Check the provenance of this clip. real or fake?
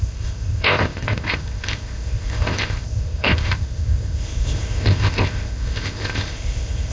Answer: fake